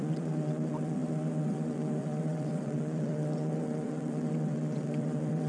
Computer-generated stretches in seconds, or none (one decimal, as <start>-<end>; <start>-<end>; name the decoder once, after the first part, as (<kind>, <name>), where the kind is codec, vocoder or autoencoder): 0.0-5.5 (vocoder, WaveNeXt)